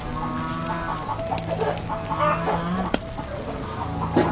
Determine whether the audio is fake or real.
real